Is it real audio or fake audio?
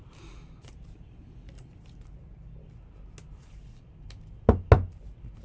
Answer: real